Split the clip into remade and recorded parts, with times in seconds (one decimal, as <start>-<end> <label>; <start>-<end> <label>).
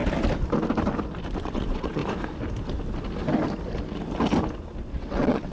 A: 0.0-1.4 recorded; 1.4-2.0 remade; 2.0-4.9 recorded; 4.9-5.5 remade